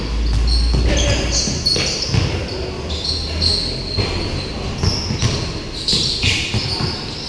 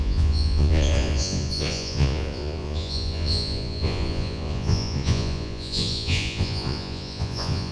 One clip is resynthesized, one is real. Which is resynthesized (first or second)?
second